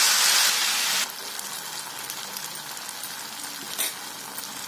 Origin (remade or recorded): recorded